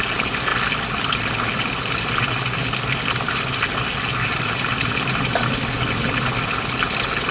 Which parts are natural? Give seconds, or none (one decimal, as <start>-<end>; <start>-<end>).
0.0-7.3